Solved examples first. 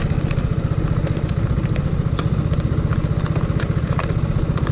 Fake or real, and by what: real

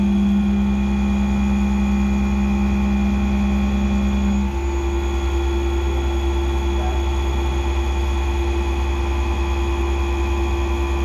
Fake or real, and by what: real